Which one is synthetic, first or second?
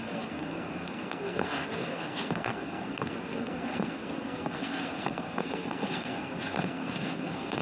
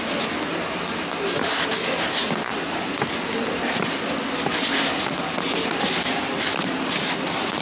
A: first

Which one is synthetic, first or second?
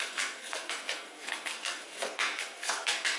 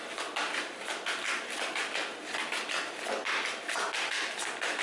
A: first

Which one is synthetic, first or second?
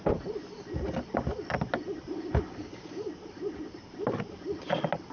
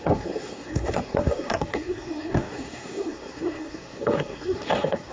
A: second